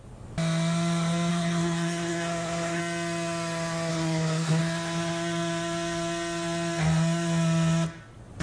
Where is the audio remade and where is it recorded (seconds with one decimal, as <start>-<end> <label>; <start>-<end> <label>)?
0.0-1.3 recorded; 1.3-2.8 remade; 2.8-3.9 recorded; 3.9-4.6 remade; 4.6-8.4 recorded

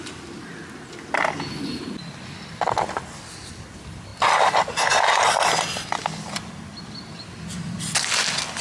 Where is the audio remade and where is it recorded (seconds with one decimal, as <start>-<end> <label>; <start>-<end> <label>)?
0.0-8.6 recorded

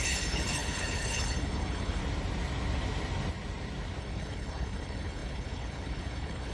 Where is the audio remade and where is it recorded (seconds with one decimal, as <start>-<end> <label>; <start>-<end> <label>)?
0.0-2.0 remade; 2.0-4.0 recorded; 4.0-6.5 remade

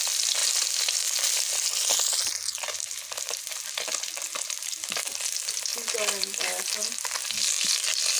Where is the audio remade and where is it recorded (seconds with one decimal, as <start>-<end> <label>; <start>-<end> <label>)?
0.0-8.2 recorded

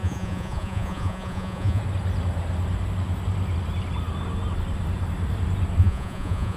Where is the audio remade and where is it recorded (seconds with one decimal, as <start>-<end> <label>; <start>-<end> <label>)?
0.0-1.8 remade; 1.8-5.8 recorded; 5.8-6.6 remade